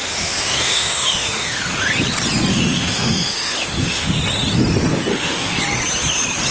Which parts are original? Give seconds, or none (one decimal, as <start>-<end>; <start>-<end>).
1.6-2.5; 4.2-5.1; 5.6-6.5